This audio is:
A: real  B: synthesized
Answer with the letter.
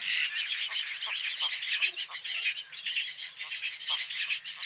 A